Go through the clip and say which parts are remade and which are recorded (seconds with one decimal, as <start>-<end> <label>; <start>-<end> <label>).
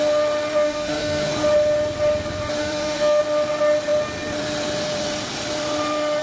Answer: 0.0-0.5 recorded; 0.5-1.3 remade; 1.3-2.6 recorded; 2.6-3.2 remade; 3.2-6.2 recorded